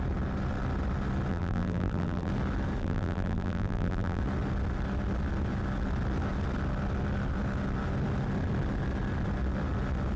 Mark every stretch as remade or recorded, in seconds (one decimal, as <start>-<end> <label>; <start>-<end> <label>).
0.0-1.3 recorded; 1.3-2.3 remade; 2.3-2.8 recorded; 2.8-4.2 remade; 4.2-10.2 recorded